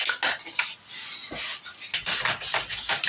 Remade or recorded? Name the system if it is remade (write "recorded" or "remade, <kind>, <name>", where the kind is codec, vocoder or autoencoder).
recorded